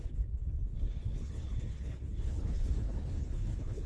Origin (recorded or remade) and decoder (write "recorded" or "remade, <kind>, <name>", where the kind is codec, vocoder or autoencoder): remade, codec, HILCodec